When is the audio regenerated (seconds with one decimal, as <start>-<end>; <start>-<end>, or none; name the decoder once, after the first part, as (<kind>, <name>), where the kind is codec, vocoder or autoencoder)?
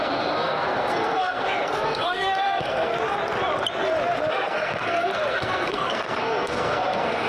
0.0-2.9 (codec, SNAC); 4.3-7.3